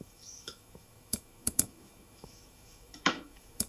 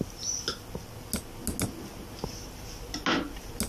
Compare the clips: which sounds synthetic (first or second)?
first